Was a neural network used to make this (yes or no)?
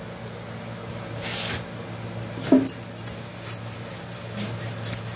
no